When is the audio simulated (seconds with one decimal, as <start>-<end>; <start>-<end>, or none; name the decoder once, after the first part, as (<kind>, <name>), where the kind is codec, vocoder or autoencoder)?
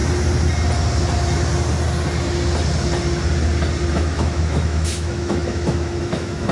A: 3.9-6.5 (autoencoder, DAC-VAE)